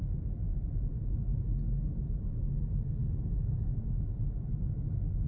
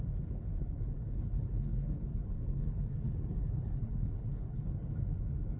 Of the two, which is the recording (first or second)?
first